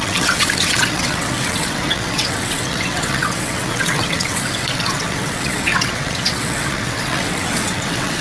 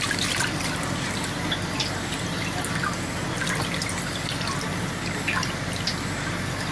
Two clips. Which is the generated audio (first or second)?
first